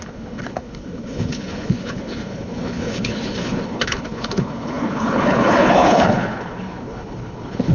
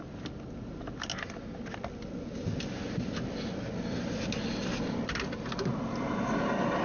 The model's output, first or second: first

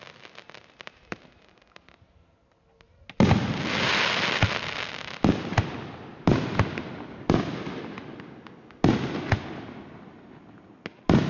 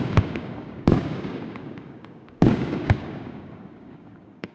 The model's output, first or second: second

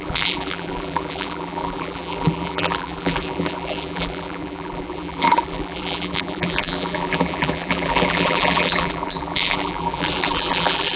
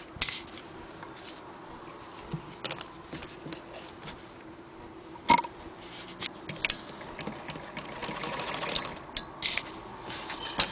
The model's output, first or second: first